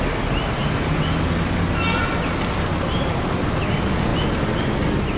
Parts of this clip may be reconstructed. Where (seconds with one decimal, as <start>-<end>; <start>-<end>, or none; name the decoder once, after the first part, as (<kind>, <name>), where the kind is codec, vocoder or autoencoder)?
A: none